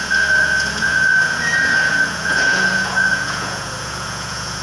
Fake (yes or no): yes